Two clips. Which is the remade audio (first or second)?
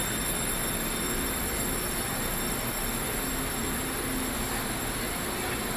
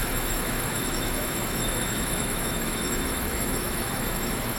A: second